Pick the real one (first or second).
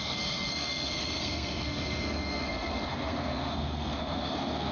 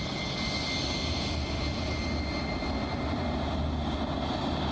second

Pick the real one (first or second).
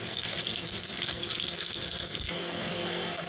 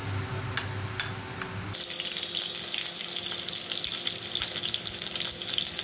second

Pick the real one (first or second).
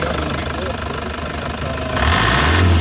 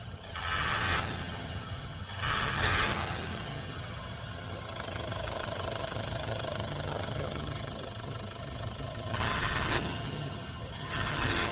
first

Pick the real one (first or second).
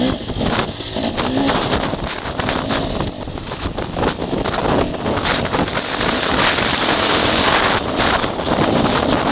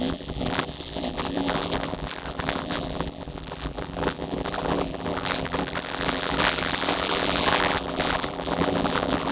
first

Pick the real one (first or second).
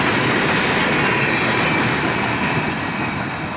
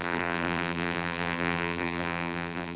first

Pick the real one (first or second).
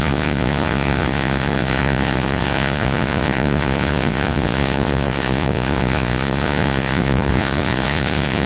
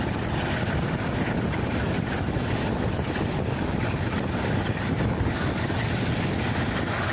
second